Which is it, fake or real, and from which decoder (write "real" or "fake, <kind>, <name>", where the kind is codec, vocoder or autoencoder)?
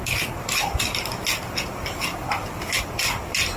real